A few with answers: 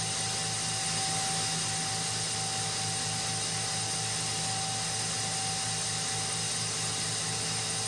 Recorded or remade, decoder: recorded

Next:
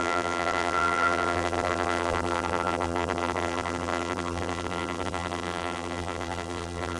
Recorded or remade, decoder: remade, vocoder, BigVGAN v2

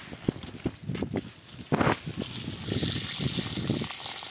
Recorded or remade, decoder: recorded